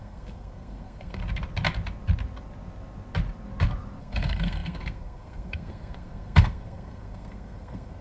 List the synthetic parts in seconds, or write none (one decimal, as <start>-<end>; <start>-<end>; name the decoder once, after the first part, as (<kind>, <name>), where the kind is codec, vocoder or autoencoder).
0.0-1.2 (codec, SNAC); 4.0-8.0